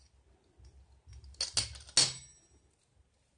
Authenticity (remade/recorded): recorded